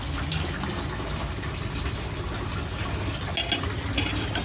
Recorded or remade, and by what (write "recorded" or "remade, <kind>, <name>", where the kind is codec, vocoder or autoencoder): recorded